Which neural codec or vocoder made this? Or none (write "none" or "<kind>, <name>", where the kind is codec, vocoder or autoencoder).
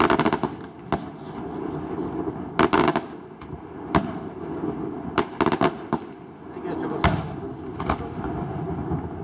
none